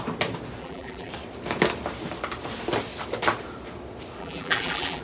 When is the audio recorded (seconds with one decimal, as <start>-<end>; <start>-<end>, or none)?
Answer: 0.0-0.6; 1.1-4.2